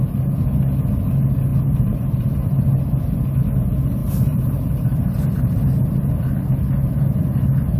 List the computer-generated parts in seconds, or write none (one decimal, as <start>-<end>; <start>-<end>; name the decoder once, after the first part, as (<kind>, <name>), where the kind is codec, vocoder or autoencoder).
1.5-2.6 (vocoder, BigVGAN v2); 4.0-6.1